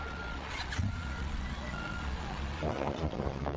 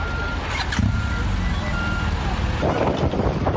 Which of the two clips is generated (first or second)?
first